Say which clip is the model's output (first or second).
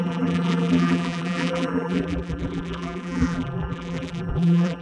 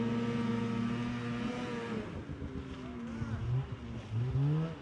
first